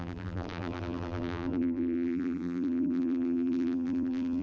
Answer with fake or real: fake